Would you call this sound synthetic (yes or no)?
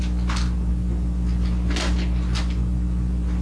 no